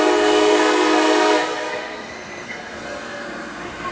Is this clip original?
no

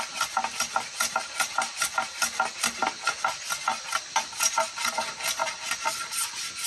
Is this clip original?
yes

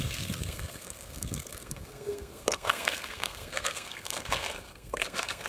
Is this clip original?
no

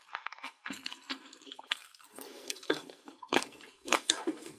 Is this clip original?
no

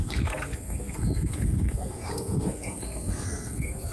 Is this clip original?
no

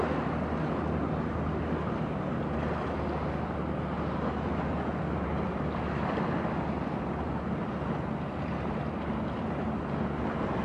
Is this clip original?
yes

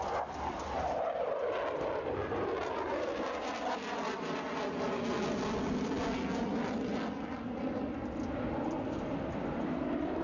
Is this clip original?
yes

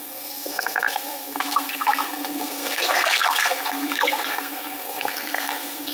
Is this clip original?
no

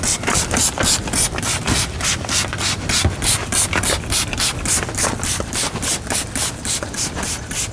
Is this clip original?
yes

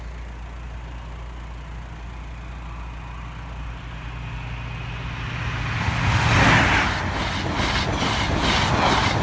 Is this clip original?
yes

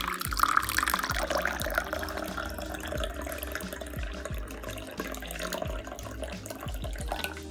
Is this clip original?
yes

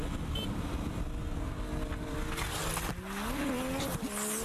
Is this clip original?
yes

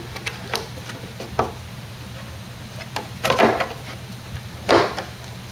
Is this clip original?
yes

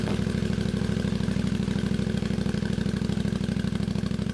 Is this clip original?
yes